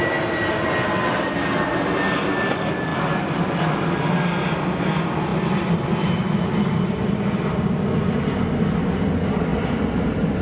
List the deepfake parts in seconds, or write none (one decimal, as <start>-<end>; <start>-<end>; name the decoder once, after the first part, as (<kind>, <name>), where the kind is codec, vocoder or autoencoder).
none